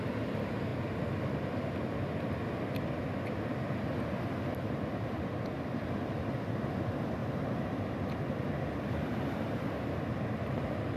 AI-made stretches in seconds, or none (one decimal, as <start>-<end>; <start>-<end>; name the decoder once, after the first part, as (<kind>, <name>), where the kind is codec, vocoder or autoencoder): 7.2-7.8 (vocoder, BigVGAN v2)